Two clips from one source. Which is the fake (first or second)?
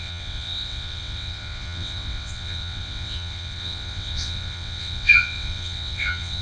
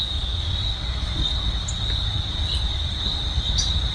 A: first